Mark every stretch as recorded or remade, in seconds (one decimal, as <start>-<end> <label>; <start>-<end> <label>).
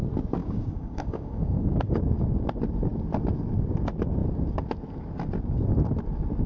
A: 0.0-0.4 recorded; 0.4-2.0 remade; 2.0-6.5 recorded